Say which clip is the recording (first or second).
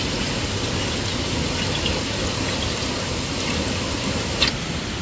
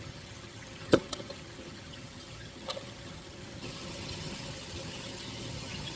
first